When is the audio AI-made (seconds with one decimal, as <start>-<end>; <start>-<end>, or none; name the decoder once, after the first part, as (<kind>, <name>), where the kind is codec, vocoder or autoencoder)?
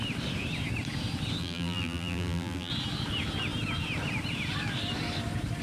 1.4-2.7 (vocoder, BigVGAN v2)